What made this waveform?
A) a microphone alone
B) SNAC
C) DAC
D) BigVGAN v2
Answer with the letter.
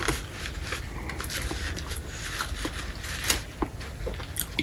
A